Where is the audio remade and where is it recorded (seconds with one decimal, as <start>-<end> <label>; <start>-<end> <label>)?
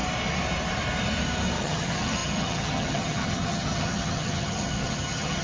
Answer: 0.0-1.6 recorded; 1.6-5.4 remade